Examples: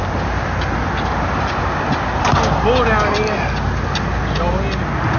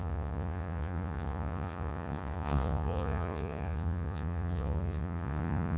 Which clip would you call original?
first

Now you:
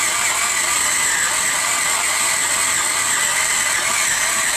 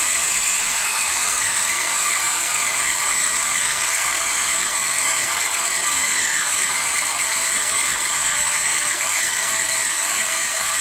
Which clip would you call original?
first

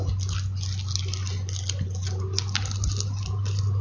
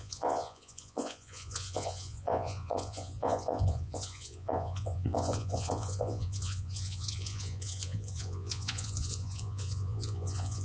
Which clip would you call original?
first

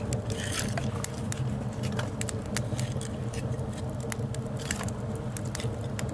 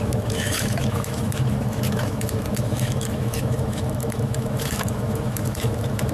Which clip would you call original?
first